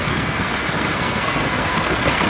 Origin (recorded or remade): remade